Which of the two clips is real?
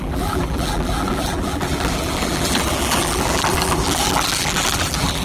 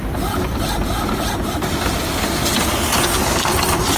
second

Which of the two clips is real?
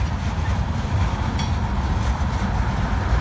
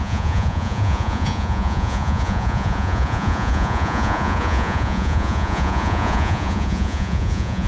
first